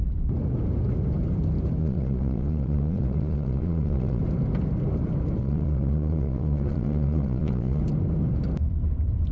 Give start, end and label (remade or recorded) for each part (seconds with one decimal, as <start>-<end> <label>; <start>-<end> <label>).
0.0-1.8 recorded; 1.8-4.2 remade; 4.2-5.4 recorded; 5.4-7.8 remade; 7.8-9.3 recorded